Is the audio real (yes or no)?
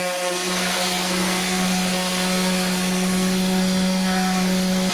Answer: no